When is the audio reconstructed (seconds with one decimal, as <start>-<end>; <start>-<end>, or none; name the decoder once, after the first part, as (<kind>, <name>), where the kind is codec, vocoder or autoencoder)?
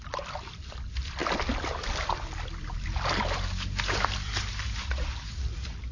1.2-4.5 (vocoder, BigVGAN v2)